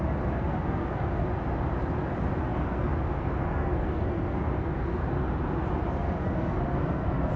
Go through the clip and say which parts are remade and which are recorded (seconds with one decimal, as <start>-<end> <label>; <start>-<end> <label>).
0.0-1.2 remade; 1.2-2.4 recorded; 2.4-5.0 remade; 5.0-5.9 recorded; 5.9-7.4 remade